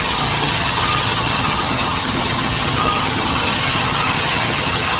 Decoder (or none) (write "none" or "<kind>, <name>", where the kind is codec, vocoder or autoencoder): vocoder, HiFi-GAN